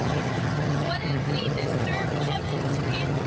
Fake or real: fake